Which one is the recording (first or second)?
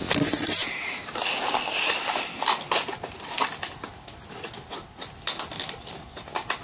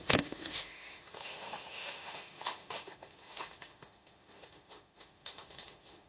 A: first